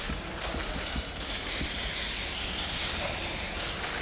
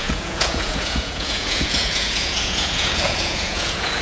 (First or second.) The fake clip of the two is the second